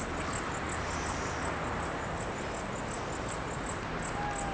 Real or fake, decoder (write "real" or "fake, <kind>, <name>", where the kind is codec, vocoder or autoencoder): real